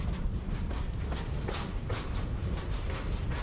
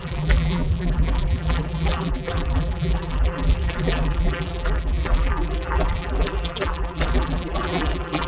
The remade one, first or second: second